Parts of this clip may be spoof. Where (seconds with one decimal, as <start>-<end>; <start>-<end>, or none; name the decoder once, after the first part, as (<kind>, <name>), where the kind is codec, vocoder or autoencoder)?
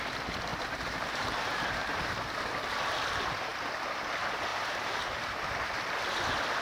0.5-2.1 (vocoder, BigVGAN v2); 4.5-5.8